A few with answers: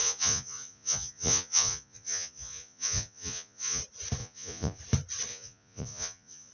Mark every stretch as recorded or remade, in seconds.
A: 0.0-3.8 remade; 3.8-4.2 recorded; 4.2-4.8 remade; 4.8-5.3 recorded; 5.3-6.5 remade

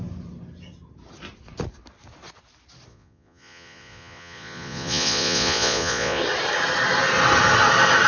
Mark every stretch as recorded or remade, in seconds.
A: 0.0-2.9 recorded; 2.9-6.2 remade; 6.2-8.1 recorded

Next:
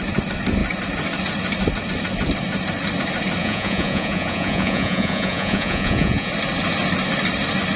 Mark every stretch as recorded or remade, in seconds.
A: 0.0-3.4 recorded; 3.4-6.3 remade; 6.3-7.8 recorded

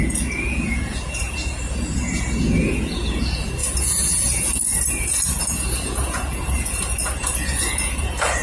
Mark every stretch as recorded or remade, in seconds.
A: 0.0-8.4 remade